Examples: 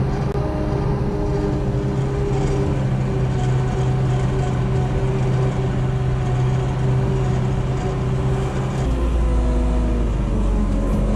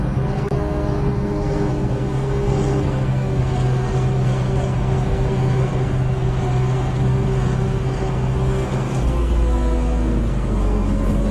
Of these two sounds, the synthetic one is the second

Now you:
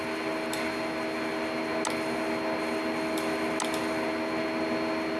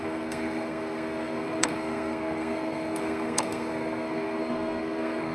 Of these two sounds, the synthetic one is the second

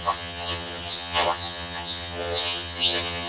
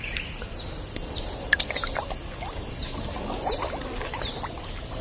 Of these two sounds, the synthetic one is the first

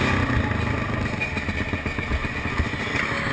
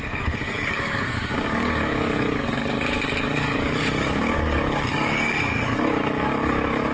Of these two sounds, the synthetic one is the second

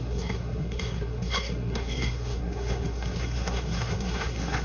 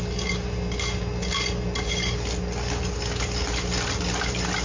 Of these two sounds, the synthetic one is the first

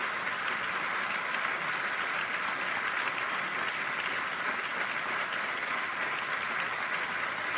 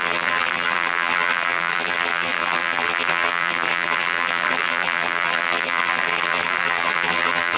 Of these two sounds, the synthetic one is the second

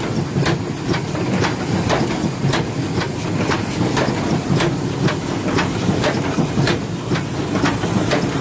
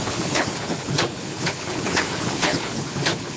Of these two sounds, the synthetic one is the second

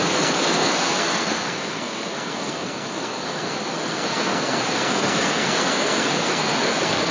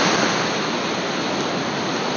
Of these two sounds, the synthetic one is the first